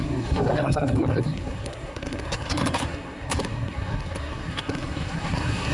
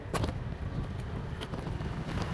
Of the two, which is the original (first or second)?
second